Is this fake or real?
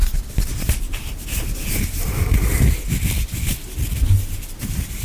real